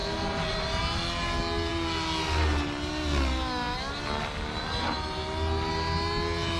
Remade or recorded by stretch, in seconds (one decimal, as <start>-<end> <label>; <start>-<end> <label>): 0.0-0.8 remade; 0.8-6.6 recorded